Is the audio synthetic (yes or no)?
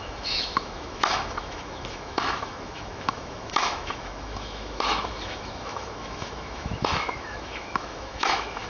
yes